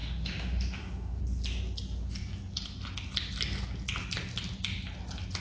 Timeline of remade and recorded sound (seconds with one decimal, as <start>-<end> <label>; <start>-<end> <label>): 0.0-1.2 remade; 1.2-5.4 recorded